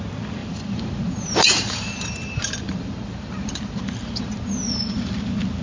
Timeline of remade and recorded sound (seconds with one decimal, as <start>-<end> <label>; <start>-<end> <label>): 0.0-0.4 recorded; 0.4-3.8 remade; 3.8-5.6 recorded